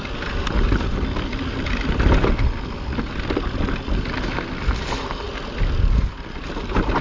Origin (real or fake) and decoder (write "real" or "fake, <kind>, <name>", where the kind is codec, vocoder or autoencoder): real